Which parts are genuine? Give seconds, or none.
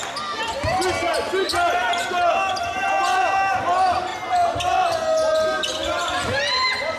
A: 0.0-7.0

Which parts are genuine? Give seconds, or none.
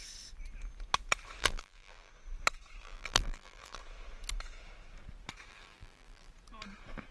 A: 0.0-1.4; 2.1-2.8; 3.8-5.5; 6.3-7.1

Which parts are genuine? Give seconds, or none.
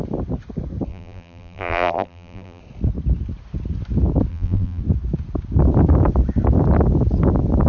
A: 0.0-0.9; 2.6-4.3; 4.8-7.7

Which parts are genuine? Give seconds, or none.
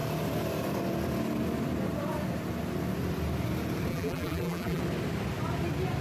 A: 0.0-3.9; 4.8-6.0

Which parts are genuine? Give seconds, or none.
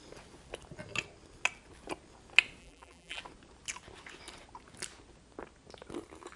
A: 0.0-2.6; 3.2-6.4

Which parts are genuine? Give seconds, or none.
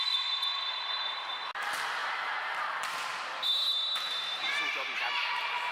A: 0.0-0.5; 1.0-2.0